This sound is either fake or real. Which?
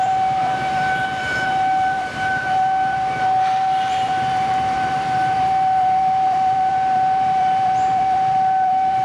fake